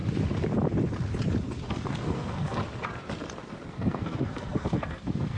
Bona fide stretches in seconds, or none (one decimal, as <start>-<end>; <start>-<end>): 0.0-1.7; 2.6-3.7